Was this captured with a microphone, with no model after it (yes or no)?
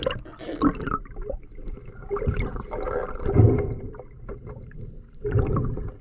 no